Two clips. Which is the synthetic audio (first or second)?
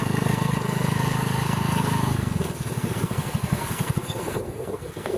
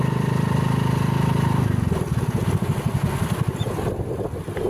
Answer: first